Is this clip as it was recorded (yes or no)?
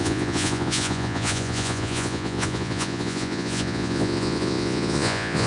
no